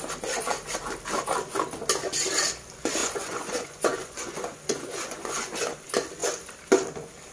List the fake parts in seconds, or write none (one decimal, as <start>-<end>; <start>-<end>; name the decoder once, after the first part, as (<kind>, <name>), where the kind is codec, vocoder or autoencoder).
3.0-5.5 (vocoder, Vocos)